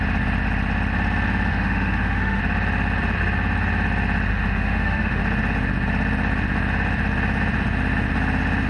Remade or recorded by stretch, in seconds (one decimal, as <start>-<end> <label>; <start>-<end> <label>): 0.0-1.5 recorded; 1.5-2.4 remade; 2.4-4.3 recorded; 4.3-5.2 remade; 5.2-8.7 recorded